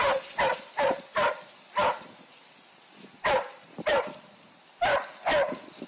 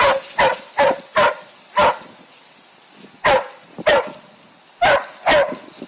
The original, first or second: second